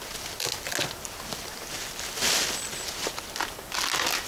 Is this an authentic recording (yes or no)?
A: yes